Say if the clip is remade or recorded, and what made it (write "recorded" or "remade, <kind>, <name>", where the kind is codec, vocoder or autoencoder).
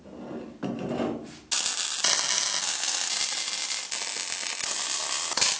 recorded